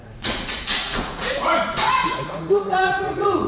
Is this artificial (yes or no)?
yes